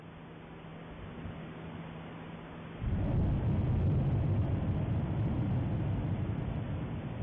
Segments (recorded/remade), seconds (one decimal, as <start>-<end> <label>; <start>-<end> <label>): 0.0-7.2 recorded